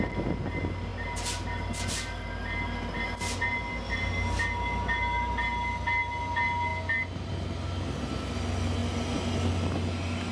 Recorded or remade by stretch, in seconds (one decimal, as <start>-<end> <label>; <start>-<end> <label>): 0.0-10.3 recorded